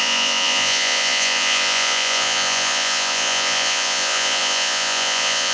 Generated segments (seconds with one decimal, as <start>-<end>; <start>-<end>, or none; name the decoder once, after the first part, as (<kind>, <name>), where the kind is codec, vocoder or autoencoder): 0.0-5.5 (vocoder, Vocos)